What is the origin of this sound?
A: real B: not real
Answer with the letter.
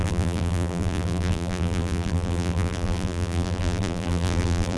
B